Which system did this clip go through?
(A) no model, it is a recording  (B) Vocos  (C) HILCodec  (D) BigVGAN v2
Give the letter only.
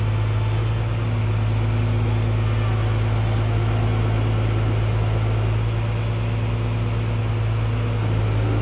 A